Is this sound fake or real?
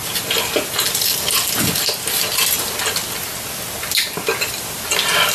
real